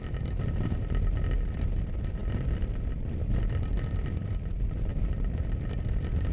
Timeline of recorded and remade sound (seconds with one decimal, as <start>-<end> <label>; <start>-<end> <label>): 0.0-6.3 recorded

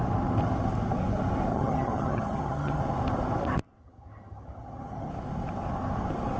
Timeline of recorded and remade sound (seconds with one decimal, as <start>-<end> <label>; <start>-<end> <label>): 0.0-1.5 recorded; 1.5-2.8 remade; 2.8-3.8 recorded; 3.8-5.1 remade; 5.1-6.4 recorded